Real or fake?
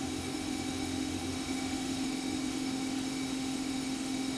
fake